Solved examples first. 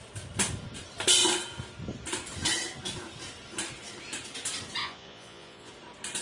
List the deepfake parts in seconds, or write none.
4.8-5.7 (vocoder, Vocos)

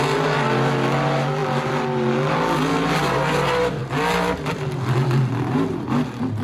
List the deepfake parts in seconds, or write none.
none

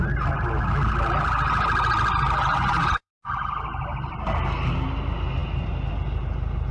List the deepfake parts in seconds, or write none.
2.5-3.1 (vocoder, Vocos)